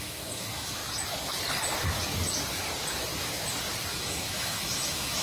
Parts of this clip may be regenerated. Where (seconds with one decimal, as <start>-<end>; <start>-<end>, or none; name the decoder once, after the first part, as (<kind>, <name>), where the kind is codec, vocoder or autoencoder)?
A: 0.0-0.8 (autoencoder, DAC-VAE); 3.9-5.2